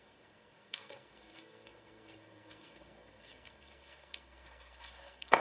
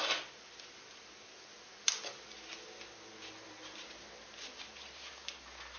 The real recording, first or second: second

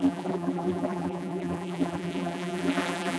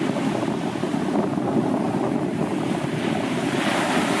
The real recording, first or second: second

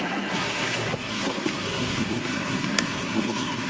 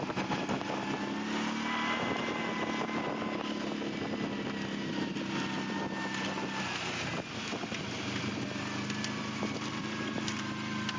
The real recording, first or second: second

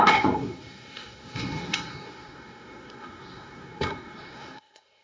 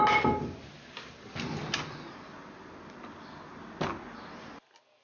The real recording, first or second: second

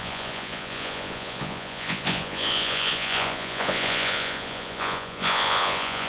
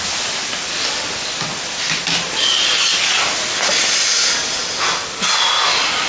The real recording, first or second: second